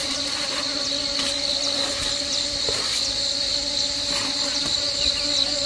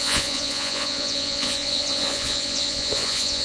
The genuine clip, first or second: first